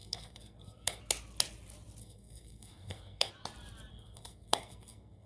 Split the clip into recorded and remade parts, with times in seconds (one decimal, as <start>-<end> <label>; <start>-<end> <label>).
0.0-1.0 remade; 1.0-2.0 recorded; 2.0-3.3 remade; 3.3-3.9 recorded; 3.9-5.3 remade